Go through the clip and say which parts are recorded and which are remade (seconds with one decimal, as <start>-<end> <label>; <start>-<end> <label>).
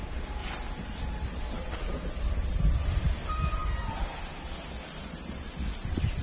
0.0-6.2 recorded